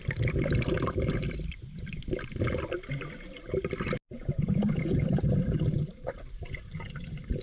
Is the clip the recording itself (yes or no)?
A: yes